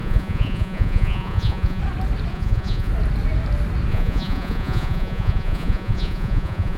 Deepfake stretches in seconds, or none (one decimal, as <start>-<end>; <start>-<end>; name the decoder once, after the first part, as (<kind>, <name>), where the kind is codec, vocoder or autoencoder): 0.0-1.8 (vocoder, Vocos); 2.3-2.9; 3.9-6.8